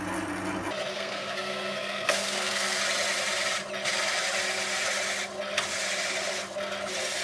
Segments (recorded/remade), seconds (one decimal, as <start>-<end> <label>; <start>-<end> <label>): 0.0-0.9 recorded; 0.9-2.8 remade; 2.8-7.2 recorded